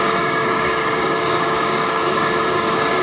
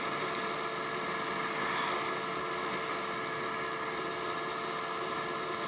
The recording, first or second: second